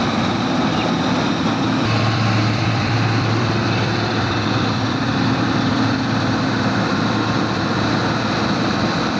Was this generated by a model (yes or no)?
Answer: yes